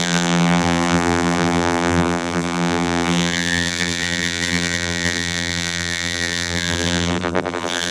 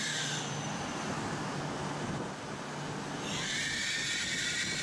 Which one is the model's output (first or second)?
first